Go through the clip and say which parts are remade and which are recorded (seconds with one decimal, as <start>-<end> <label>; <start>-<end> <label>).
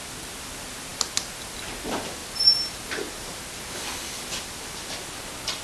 0.0-5.6 recorded